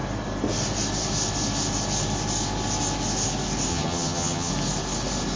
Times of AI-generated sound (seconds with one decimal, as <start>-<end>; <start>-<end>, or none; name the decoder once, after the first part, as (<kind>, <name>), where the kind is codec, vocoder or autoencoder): 3.7-4.5 (vocoder, HiFi-GAN)